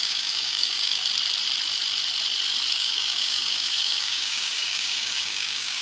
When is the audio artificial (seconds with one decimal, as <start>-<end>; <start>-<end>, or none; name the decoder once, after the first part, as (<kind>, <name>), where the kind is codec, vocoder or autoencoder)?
0.0-1.0 (codec, DAC); 2.7-5.8